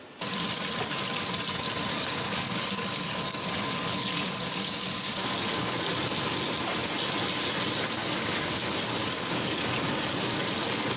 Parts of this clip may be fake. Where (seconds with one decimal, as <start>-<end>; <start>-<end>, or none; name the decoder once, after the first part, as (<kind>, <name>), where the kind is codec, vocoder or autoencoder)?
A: 1.9-4.5 (codec, DAC); 5.2-6.0; 8.0-8.6; 9.0-10.3